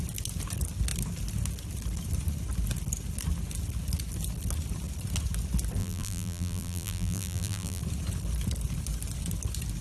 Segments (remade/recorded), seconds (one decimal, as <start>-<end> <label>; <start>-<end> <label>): 0.0-5.8 recorded; 5.8-7.8 remade; 7.8-9.8 recorded